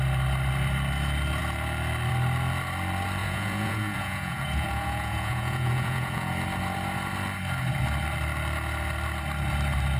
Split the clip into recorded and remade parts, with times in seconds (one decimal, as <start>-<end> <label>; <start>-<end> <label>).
0.0-3.2 recorded; 3.2-6.3 remade; 6.3-10.0 recorded